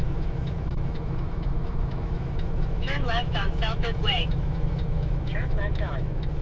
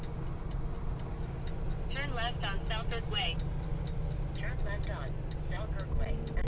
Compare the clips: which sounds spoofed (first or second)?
first